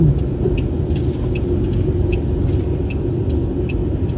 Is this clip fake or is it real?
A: real